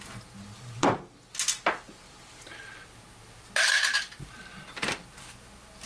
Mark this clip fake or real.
real